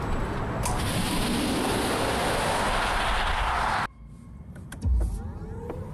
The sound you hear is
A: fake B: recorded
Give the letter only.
B